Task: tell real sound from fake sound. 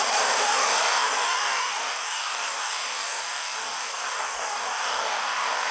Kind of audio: fake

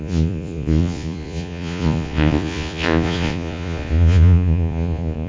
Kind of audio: fake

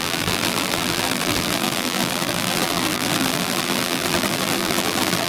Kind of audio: fake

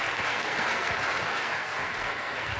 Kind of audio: fake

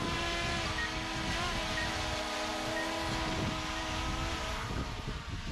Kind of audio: real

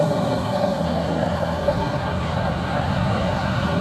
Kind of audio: fake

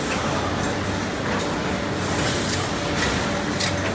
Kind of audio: real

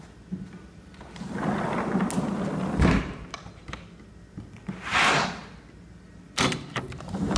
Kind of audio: real